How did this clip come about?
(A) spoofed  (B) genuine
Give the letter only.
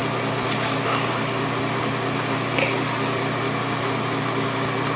B